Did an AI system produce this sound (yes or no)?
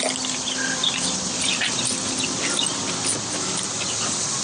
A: no